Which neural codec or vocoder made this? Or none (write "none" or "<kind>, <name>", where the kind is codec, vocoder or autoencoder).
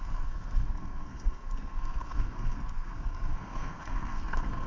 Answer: codec, SNAC